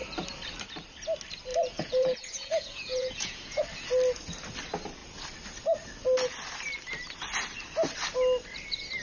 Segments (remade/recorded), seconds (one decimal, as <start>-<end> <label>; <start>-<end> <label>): 0.0-1.5 recorded; 1.5-3.6 remade; 3.6-9.0 recorded